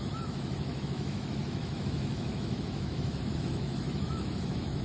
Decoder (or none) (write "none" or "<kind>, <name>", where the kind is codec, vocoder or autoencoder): autoencoder, DAC-VAE